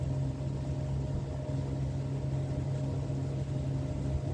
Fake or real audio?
real